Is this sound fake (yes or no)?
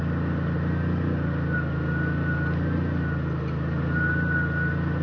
no